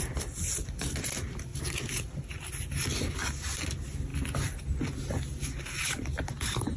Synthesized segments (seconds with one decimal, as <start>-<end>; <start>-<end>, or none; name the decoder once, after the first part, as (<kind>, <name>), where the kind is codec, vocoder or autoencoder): none